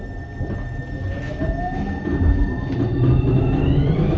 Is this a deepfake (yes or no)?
no